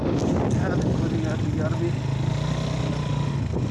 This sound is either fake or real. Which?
real